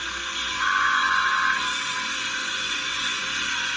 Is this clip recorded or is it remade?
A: remade